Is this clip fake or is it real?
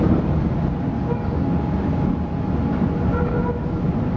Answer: real